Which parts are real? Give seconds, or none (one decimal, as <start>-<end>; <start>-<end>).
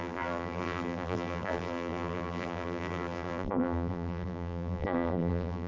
none